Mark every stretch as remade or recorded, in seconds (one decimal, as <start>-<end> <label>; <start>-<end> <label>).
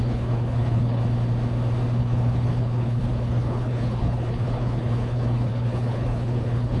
0.0-1.0 remade; 1.0-2.0 recorded; 2.0-6.8 remade